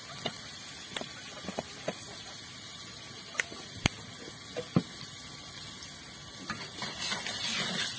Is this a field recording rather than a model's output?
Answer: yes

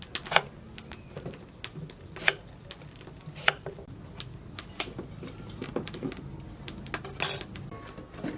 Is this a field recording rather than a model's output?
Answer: yes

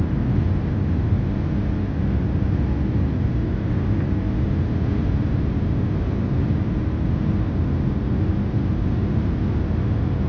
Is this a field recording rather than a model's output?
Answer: yes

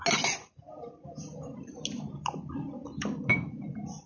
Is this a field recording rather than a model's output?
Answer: yes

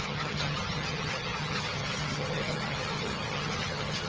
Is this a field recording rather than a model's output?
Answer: no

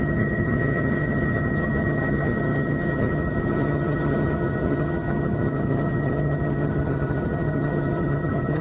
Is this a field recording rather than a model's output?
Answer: no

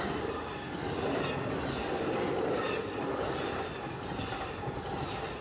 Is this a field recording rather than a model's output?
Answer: yes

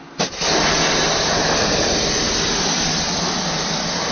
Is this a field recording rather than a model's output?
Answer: yes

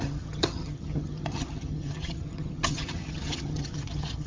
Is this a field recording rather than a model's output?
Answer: no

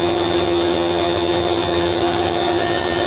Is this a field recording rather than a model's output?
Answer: no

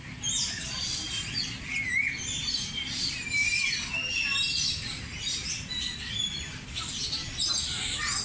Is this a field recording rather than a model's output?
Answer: yes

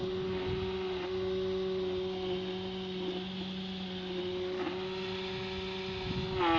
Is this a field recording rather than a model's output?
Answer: yes